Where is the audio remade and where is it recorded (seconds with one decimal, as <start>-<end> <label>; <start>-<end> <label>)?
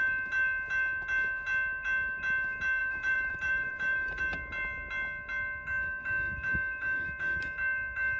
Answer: 0.0-2.8 recorded; 2.8-4.2 remade; 4.2-8.2 recorded